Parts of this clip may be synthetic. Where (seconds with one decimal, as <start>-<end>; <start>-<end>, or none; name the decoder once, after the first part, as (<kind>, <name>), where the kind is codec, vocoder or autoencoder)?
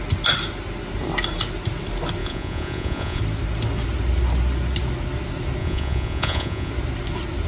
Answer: 2.2-3.2 (vocoder, Vocos); 5.6-6.7